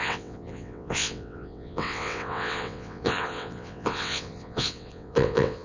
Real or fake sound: fake